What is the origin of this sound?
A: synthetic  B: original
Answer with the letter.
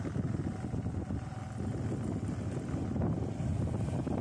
B